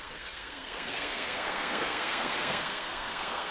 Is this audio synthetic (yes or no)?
yes